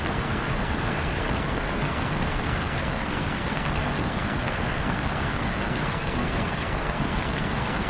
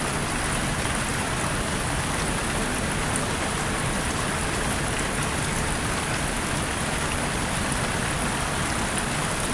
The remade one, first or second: first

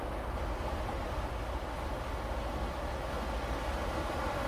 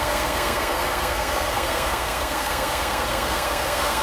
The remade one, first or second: second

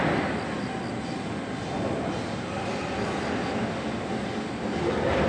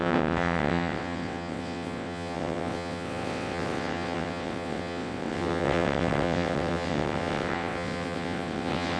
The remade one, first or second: second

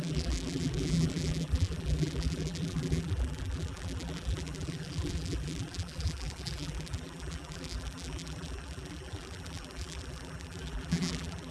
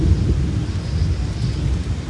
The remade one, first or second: first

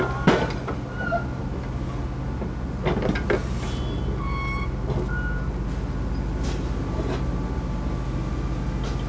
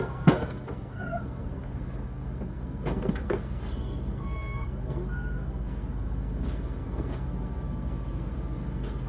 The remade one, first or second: second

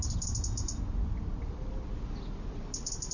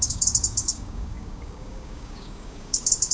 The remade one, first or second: second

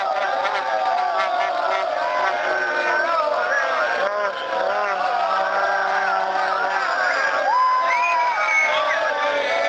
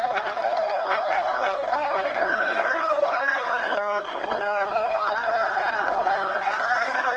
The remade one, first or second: second